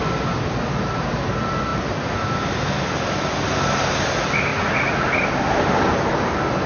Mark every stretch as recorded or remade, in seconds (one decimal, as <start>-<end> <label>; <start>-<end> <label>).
0.0-4.5 recorded; 4.5-5.2 remade; 5.2-6.7 recorded